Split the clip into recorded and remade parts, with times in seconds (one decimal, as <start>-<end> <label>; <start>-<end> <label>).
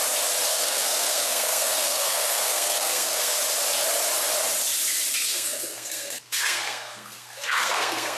0.0-0.5 recorded; 0.5-3.4 remade; 3.4-5.1 recorded; 5.1-8.2 remade